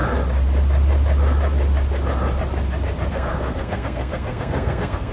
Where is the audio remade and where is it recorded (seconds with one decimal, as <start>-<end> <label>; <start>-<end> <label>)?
0.0-3.1 recorded; 3.1-5.1 remade